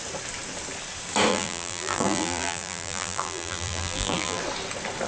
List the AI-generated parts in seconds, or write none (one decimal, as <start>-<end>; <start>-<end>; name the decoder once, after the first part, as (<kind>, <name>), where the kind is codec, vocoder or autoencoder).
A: 1.3-4.4 (vocoder, BigVGAN v2)